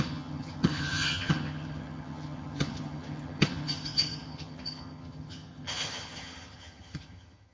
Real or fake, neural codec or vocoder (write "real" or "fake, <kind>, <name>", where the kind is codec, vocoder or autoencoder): fake, vocoder, HiFi-GAN